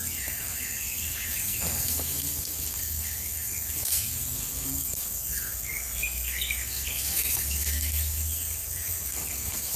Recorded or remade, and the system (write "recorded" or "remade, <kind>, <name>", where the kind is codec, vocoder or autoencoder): remade, codec, SNAC